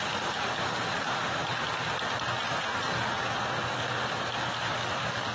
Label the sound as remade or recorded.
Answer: recorded